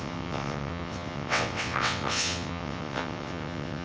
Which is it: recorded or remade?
remade